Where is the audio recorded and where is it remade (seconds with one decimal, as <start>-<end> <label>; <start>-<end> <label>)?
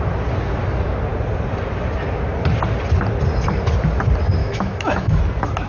0.0-4.4 recorded; 4.4-5.2 remade; 5.2-5.7 recorded